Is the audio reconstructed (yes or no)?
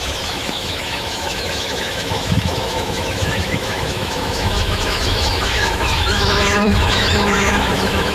yes